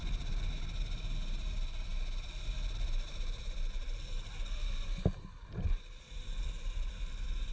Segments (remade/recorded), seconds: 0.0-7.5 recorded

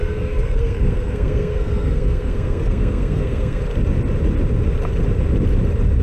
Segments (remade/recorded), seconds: 0.0-3.6 remade; 3.6-6.0 recorded